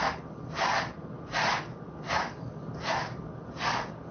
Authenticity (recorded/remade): recorded